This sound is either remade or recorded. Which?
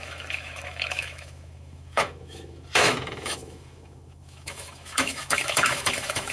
remade